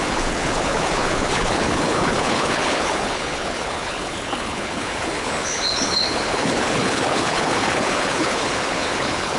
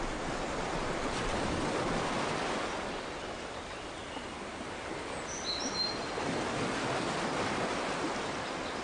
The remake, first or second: first